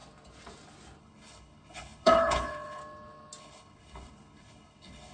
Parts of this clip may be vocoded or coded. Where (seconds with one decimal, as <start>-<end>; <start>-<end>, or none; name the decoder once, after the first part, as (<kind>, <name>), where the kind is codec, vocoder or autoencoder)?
1.0-2.8 (codec, HILCodec); 3.4-5.1